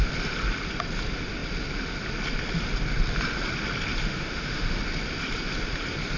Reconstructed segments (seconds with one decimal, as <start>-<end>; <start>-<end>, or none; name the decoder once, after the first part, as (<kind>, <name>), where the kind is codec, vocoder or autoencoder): 4.0-4.8 (autoencoder, DAC-VAE)